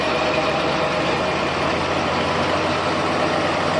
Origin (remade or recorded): recorded